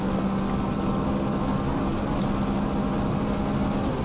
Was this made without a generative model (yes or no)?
yes